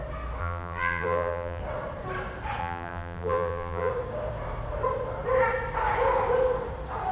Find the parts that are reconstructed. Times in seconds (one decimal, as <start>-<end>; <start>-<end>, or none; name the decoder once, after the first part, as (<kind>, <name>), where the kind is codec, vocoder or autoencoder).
0.4-1.6 (vocoder, BigVGAN v2); 2.6-3.9